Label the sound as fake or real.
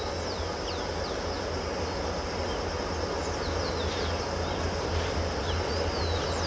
real